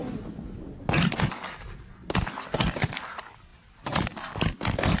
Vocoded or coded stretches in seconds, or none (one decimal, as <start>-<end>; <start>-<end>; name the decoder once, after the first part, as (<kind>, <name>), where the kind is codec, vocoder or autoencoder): none